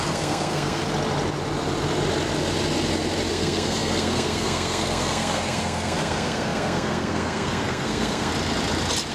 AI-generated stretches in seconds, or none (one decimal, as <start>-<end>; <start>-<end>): 0.0-0.8; 3.3-8.3